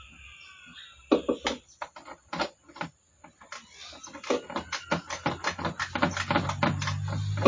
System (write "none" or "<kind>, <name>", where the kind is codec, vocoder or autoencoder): none